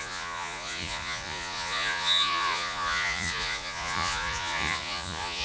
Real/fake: fake